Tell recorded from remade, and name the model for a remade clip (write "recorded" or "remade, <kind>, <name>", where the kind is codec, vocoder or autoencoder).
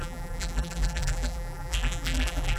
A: remade, vocoder, BigVGAN v2